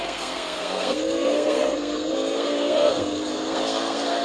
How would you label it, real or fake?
fake